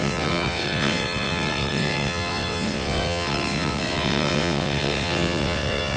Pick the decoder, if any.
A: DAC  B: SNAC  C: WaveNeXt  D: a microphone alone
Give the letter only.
C